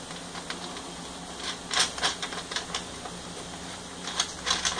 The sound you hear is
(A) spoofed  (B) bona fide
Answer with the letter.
B